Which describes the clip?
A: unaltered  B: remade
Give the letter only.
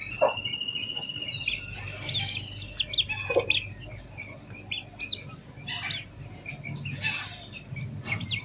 A